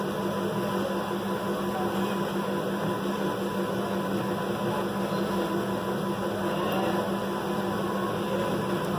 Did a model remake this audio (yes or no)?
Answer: no